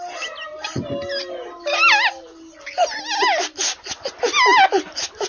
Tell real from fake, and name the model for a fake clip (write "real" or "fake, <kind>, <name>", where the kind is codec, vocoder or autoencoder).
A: real